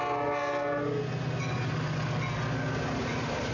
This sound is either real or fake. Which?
real